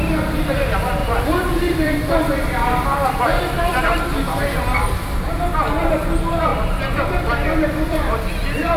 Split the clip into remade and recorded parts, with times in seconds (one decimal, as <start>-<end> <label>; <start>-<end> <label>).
0.0-1.0 recorded; 1.0-3.8 remade; 3.8-6.5 recorded; 6.5-8.8 remade